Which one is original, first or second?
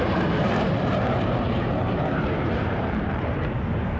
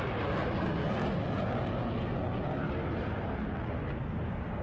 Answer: second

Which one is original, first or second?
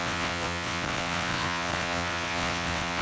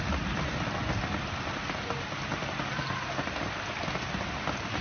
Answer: second